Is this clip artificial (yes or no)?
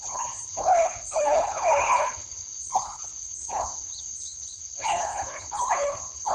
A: yes